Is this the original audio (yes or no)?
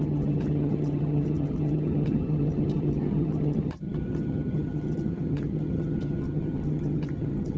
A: no